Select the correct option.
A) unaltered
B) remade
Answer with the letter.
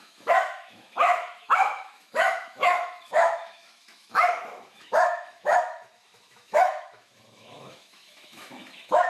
B